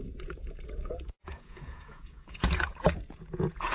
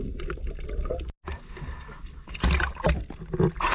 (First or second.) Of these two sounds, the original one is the second